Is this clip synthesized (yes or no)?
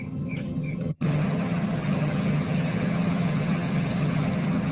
yes